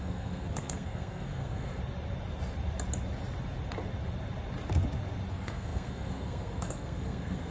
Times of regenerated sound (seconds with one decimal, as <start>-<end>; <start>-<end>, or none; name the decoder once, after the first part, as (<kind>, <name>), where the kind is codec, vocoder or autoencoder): 0.0-1.8 (codec, SNAC); 5.3-7.5